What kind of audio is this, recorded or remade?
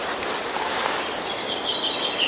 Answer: recorded